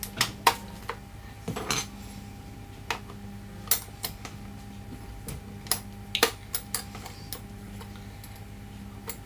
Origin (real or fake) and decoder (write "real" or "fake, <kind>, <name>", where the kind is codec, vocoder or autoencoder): real